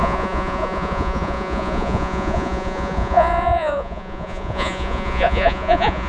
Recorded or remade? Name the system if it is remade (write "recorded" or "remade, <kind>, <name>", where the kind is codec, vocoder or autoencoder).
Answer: remade, vocoder, Vocos